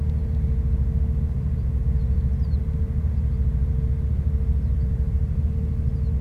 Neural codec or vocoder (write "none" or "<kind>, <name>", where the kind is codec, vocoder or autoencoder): none